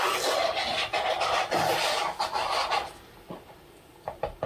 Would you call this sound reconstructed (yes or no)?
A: no